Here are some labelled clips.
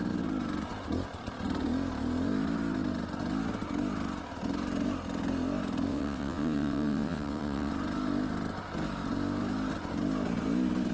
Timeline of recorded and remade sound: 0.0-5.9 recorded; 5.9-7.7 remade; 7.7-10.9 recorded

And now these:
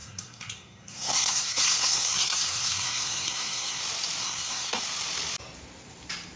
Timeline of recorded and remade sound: 0.0-3.8 remade; 3.8-4.2 recorded; 4.2-4.8 remade; 4.8-6.4 recorded

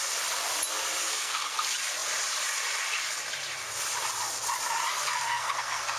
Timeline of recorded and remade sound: 0.0-1.0 recorded; 1.0-1.6 remade; 1.6-4.9 recorded; 4.9-6.0 remade

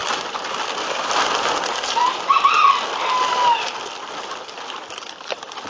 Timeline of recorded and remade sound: 0.0-1.4 remade; 1.4-2.6 recorded; 2.6-5.7 remade

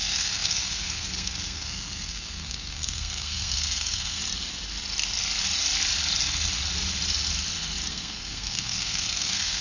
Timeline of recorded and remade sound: 0.0-4.2 remade; 4.2-7.9 recorded; 7.9-9.6 remade